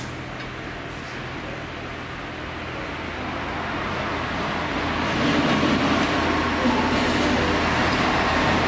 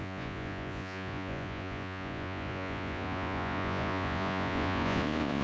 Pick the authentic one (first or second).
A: first